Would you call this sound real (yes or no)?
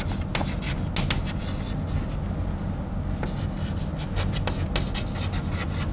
yes